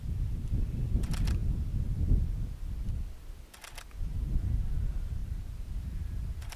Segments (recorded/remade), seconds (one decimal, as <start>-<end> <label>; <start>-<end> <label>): 0.0-4.1 recorded; 4.1-4.8 remade; 4.8-5.2 recorded; 5.2-6.6 remade